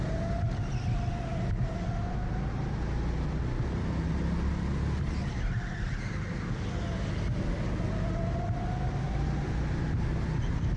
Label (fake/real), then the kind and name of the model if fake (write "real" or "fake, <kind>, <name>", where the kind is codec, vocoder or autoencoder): real